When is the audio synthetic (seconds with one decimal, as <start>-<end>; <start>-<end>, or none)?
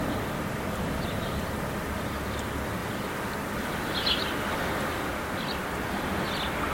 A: none